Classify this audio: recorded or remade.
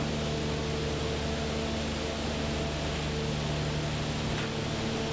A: recorded